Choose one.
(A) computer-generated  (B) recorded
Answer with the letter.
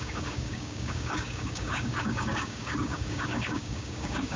A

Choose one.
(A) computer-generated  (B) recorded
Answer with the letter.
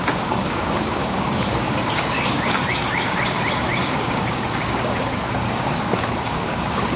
A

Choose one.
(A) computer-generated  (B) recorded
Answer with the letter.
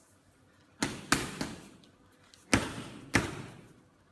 B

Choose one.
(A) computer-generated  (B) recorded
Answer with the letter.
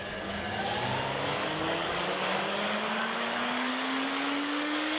A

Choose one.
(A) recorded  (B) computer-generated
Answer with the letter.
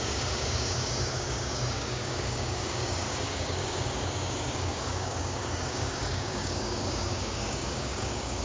B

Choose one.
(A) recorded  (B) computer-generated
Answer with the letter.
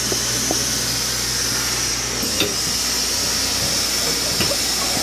A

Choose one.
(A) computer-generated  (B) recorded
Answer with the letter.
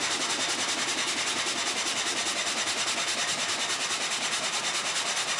B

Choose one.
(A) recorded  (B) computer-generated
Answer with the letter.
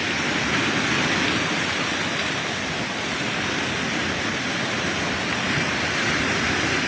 A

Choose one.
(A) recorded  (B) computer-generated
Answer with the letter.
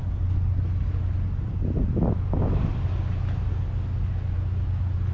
A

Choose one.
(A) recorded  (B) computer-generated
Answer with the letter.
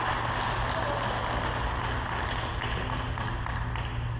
A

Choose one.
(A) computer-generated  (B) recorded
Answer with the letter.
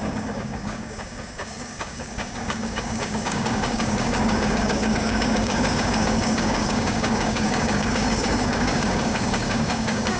A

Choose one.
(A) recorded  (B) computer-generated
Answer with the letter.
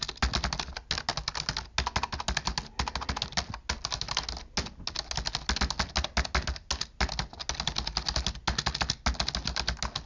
A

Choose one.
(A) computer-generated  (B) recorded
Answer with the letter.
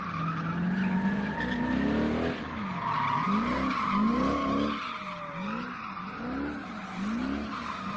B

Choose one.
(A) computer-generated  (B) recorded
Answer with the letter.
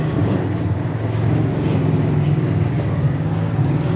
A